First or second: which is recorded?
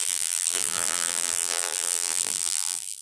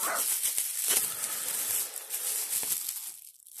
second